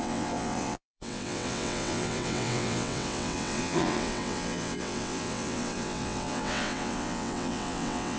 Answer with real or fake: fake